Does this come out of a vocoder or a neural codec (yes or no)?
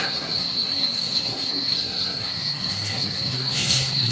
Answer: yes